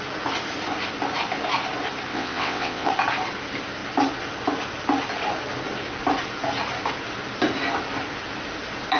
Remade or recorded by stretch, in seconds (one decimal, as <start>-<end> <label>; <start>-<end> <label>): 0.0-2.1 recorded; 2.1-2.9 remade; 2.9-9.0 recorded